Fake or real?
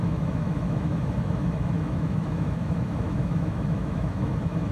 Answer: fake